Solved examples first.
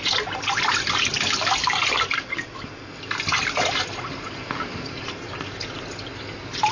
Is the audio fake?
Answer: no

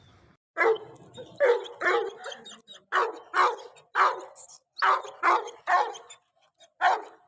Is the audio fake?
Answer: no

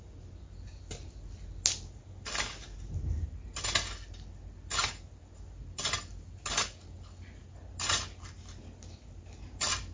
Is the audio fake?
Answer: no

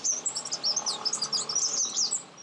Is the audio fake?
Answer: no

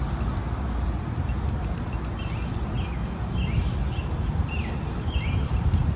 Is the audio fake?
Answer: no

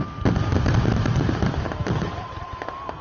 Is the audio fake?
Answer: no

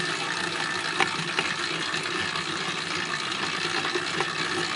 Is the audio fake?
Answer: no